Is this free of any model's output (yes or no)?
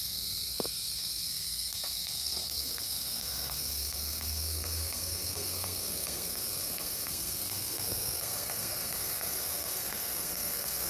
no